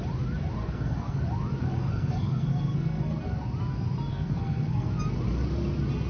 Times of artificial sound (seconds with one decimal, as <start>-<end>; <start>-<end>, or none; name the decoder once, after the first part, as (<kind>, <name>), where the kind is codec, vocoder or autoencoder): 0.6-1.2 (codec, SNAC); 1.6-3.4; 4.1-4.9